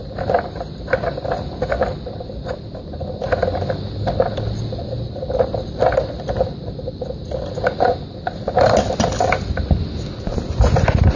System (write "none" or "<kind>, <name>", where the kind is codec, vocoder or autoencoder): none